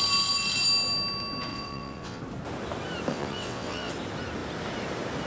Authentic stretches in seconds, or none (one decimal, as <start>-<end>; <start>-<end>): 0.0-1.5; 2.2-3.1; 3.9-5.3